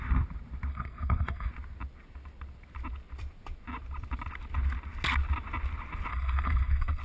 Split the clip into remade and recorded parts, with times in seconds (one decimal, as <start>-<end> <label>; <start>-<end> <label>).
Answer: 0.0-0.7 recorded; 0.7-1.5 remade; 1.5-6.1 recorded; 6.1-7.0 remade